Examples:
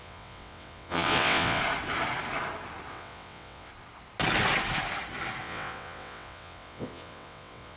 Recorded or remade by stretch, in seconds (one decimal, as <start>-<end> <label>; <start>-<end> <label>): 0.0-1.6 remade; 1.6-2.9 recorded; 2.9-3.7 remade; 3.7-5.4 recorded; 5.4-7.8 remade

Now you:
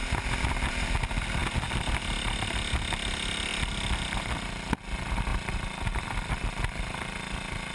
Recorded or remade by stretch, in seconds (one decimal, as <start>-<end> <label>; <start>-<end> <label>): 0.0-0.7 remade; 0.7-1.4 recorded; 1.4-2.0 remade; 2.0-5.3 recorded; 5.3-6.4 remade; 6.4-7.7 recorded

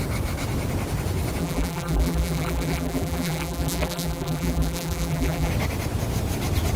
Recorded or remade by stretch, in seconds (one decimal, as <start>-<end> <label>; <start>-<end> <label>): 0.0-1.4 recorded; 1.4-5.5 remade; 5.5-6.8 recorded